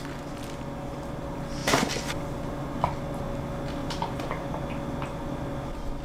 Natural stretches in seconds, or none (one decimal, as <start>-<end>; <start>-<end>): 0.0-3.8; 4.7-6.0